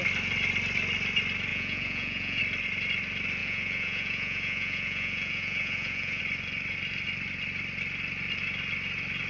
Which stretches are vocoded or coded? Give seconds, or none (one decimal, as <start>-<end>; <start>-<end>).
1.5-2.4; 3.4-6.2